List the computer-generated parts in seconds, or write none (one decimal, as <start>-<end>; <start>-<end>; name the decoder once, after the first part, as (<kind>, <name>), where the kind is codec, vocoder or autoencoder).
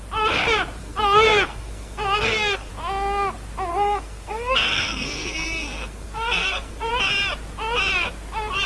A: 0.8-2.7 (codec, SNAC); 3.7-6.9